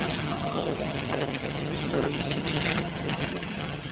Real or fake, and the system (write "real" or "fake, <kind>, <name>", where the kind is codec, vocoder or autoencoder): fake, vocoder, HiFi-GAN